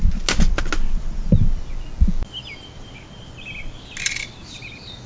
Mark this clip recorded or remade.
recorded